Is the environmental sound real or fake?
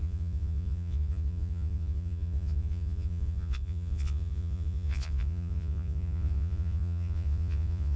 fake